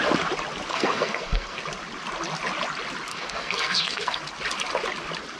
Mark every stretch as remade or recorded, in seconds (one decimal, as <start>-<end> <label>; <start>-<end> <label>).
0.0-0.7 recorded; 0.7-1.6 remade; 1.6-3.1 recorded; 3.1-4.2 remade; 4.2-5.4 recorded